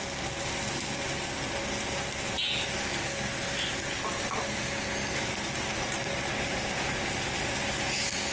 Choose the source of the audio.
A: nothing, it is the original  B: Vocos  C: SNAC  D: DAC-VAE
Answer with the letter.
A